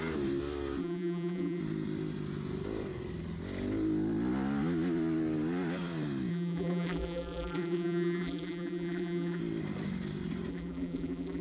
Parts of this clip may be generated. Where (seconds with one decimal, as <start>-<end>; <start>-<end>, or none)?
0.8-1.6; 6.3-9.4; 10.5-11.4